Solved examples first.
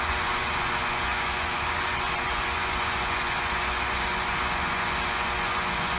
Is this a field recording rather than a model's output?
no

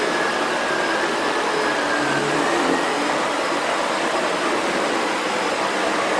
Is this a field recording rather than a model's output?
yes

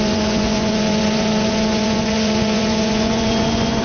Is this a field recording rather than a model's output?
no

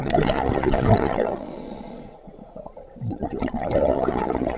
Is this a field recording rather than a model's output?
no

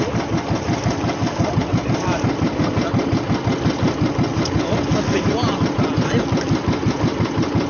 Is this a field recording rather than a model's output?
yes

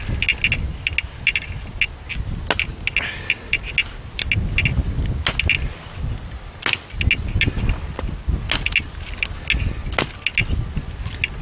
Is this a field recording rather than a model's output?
yes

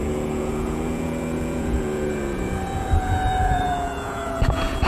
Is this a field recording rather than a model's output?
no